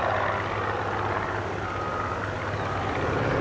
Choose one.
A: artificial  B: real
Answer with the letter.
B